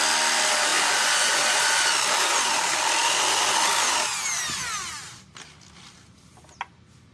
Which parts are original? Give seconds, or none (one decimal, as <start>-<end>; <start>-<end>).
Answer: 0.0-0.7; 1.9-7.1